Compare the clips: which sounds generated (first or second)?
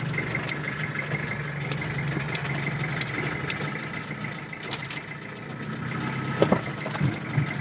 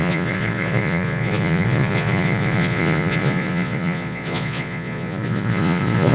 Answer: second